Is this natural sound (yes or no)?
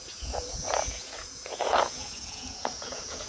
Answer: no